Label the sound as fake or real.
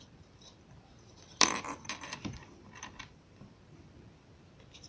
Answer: fake